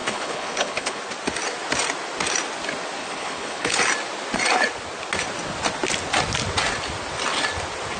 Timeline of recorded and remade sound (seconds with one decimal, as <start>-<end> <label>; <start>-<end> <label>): 0.0-1.0 remade; 1.0-3.0 recorded; 3.0-3.8 remade; 3.8-8.0 recorded